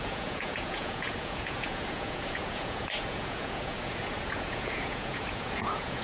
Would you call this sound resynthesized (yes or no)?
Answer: yes